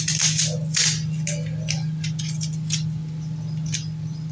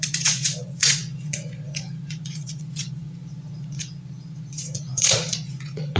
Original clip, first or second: first